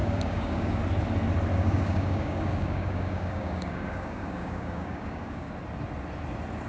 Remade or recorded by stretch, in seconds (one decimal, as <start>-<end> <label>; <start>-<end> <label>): 0.0-0.8 remade; 0.8-1.5 recorded; 1.5-5.5 remade; 5.5-6.7 recorded